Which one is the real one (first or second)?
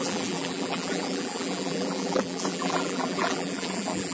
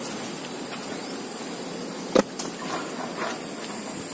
second